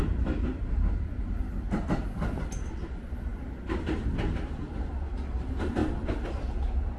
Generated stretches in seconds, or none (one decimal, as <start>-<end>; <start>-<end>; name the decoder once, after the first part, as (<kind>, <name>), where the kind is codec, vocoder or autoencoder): 0.6-1.2 (vocoder, BigVGAN v2)